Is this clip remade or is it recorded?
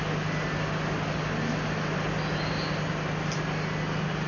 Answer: recorded